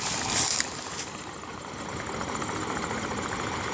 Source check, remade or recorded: recorded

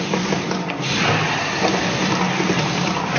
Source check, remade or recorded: recorded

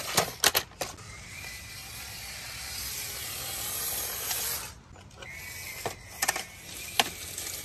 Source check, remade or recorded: recorded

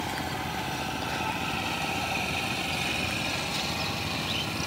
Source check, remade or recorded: recorded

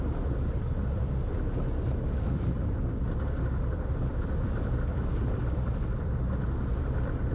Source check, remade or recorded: recorded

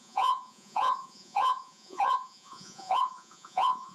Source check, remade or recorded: remade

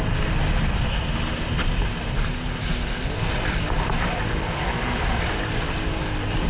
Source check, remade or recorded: recorded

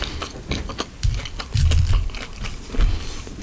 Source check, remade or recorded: recorded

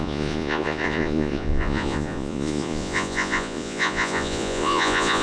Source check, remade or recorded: remade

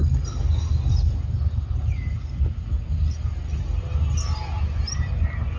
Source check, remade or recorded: recorded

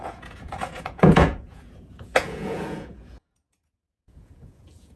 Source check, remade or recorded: remade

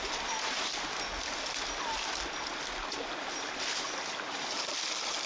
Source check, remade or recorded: recorded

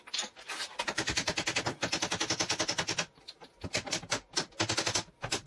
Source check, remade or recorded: recorded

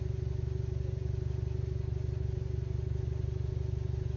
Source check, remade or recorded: recorded